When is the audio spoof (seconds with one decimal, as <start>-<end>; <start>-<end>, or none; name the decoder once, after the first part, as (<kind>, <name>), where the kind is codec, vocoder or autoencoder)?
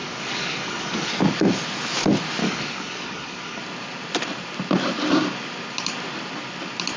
0.0-1.1 (codec, DAC); 2.4-3.6